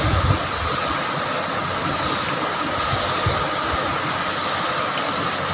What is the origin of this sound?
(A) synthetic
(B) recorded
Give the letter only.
B